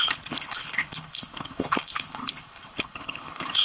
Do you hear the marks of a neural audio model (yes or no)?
yes